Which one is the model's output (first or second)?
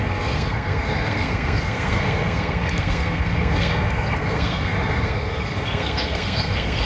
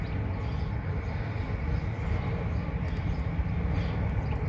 first